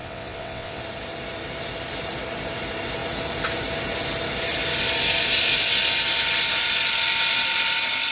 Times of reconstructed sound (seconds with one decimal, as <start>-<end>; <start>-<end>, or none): 0.0-0.8